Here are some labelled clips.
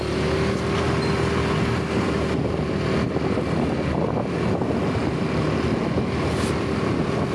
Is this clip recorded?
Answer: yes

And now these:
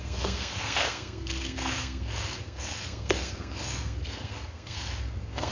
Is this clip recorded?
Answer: no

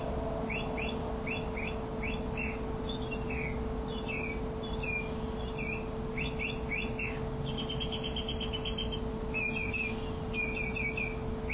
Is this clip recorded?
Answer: yes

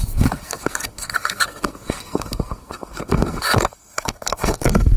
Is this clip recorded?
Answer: no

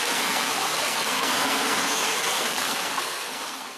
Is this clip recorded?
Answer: no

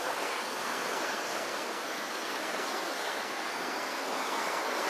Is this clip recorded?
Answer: no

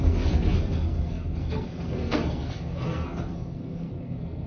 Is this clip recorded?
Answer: no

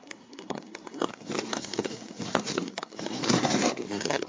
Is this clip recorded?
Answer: no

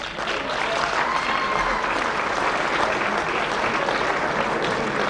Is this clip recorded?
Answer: yes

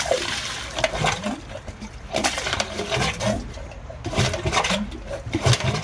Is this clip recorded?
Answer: yes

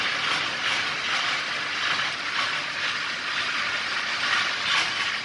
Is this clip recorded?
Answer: yes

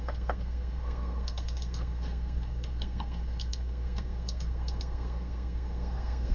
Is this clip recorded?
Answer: no